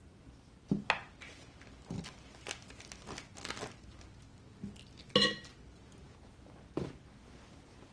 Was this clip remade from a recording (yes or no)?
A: no